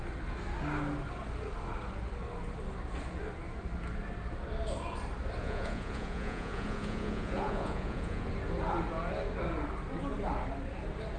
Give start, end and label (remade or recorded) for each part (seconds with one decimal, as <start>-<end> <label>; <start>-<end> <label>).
0.0-5.4 recorded; 5.4-8.3 remade; 8.3-11.2 recorded